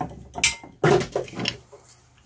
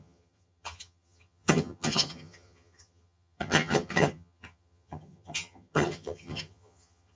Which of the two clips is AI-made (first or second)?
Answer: second